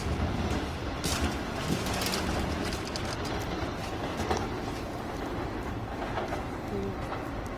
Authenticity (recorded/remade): recorded